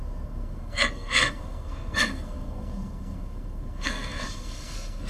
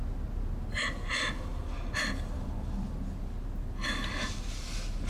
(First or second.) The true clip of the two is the second